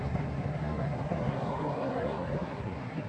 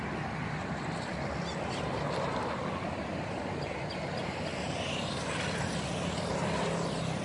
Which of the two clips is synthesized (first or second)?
first